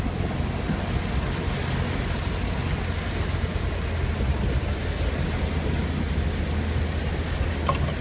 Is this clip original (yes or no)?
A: yes